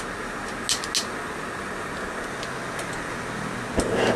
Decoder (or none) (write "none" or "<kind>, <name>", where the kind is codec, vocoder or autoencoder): none